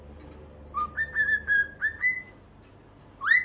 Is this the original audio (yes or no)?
yes